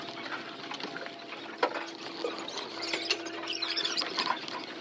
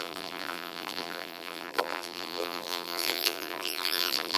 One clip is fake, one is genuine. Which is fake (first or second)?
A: second